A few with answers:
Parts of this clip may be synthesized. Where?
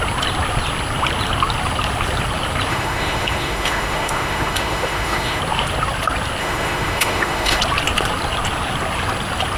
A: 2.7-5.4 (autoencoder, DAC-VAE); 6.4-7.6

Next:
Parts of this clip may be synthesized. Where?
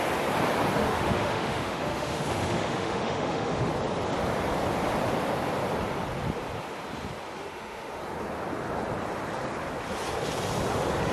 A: 0.8-3.7 (autoencoder, DAC-VAE); 7.5-8.0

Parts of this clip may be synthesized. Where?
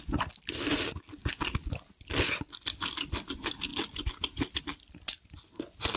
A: none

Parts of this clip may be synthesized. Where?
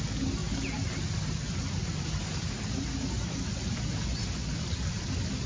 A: none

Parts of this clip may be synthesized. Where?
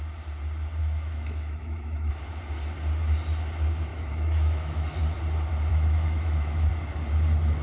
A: 0.8-2.1 (autoencoder, DAC-VAE); 3.9-5.0; 5.7-6.7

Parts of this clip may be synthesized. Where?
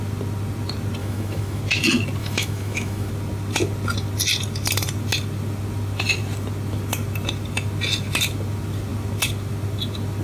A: 1.0-1.6 (autoencoder, DAC-VAE); 2.2-3.1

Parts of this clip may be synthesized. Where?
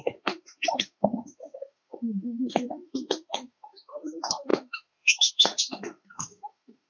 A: 0.0-6.9 (autoencoder, DAC-VAE)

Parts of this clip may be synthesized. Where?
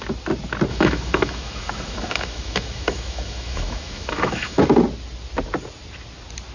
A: 0.7-4.6 (autoencoder, DAC-VAE)